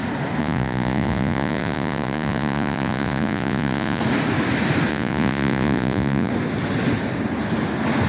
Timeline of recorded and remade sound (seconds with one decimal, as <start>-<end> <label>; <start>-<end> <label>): 0.0-0.4 recorded; 0.4-4.0 remade; 4.0-4.9 recorded; 4.9-6.3 remade; 6.3-8.1 recorded